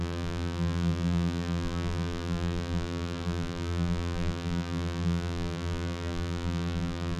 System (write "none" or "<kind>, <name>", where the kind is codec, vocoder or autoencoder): vocoder, BigVGAN v2